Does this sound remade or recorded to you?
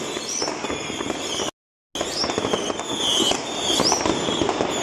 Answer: recorded